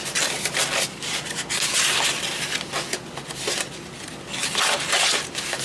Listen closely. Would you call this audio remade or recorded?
recorded